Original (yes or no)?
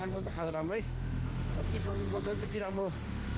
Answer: no